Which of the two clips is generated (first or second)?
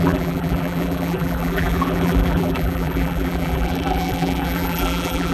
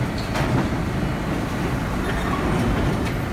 first